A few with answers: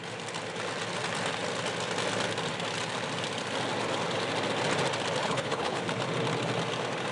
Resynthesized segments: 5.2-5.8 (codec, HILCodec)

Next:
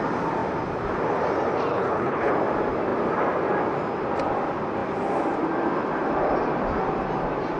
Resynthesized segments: 1.7-2.3 (codec, HILCodec)

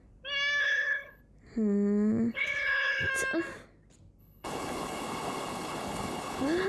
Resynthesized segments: 0.6-1.2 (codec, HILCodec); 2.3-3.1; 4.2-6.7

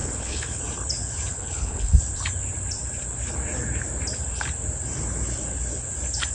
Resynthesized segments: 0.0-0.6 (codec, HILCodec); 1.3-2.0

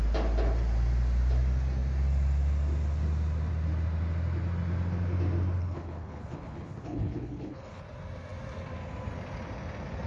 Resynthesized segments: 5.6-7.8 (codec, HILCodec)